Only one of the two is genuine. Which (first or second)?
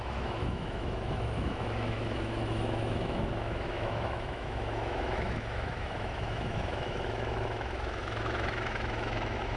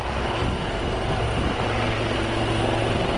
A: second